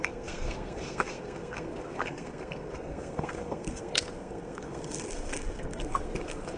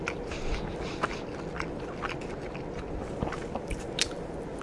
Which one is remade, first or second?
first